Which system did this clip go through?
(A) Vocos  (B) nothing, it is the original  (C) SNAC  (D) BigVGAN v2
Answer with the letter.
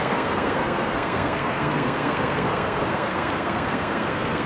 C